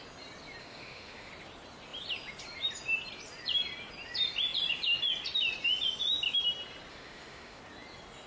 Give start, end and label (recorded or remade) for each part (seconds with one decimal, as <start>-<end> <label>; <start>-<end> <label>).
0.0-0.6 recorded; 0.6-1.3 remade; 1.3-6.9 recorded; 6.9-7.6 remade; 7.6-8.3 recorded